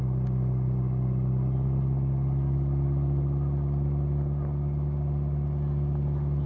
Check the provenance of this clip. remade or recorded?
recorded